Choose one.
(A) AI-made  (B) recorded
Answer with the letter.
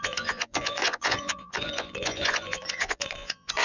A